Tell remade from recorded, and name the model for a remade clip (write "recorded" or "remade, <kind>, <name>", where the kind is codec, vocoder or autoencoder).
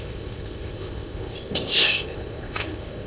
remade, codec, ZipCodec